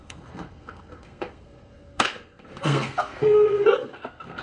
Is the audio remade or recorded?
remade